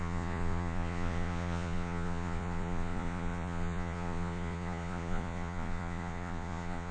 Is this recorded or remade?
remade